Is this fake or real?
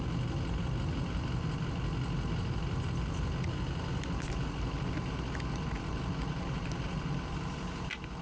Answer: real